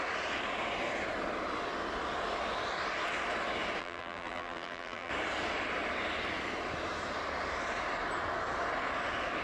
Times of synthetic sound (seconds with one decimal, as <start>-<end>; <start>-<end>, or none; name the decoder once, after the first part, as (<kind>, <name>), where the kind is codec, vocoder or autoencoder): 3.8-5.1 (vocoder, BigVGAN v2)